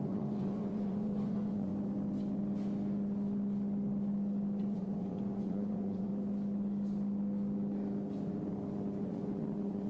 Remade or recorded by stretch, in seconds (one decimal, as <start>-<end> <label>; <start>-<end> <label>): 0.0-1.7 remade; 1.7-4.6 recorded; 4.6-6.1 remade; 6.1-9.0 recorded; 9.0-9.9 remade